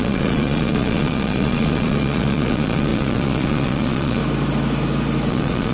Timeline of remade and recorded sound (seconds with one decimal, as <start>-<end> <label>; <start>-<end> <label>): 0.0-4.2 remade; 4.2-5.3 recorded; 5.3-5.7 remade